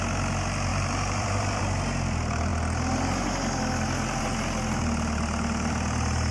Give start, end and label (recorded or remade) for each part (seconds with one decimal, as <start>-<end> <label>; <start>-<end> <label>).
0.0-0.7 recorded; 0.7-1.6 remade; 1.6-6.3 recorded